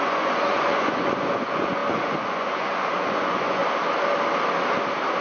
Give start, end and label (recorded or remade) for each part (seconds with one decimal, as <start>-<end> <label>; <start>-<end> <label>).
0.0-3.6 remade; 3.6-5.2 recorded